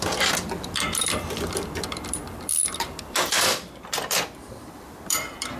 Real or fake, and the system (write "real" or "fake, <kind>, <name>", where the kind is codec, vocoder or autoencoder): fake, vocoder, BigVGAN v2